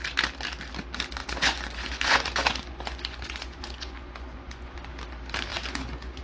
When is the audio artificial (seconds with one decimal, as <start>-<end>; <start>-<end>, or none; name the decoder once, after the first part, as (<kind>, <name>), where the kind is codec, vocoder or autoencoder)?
1.2-4.9 (vocoder, Vocos); 5.5-6.2